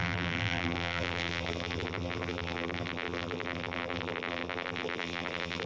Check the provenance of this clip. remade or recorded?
remade